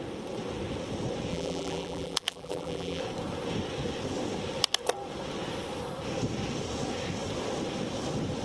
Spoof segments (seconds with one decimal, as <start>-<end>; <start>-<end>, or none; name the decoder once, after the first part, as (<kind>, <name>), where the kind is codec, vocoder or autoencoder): 1.3-3.0 (vocoder, BigVGAN v2)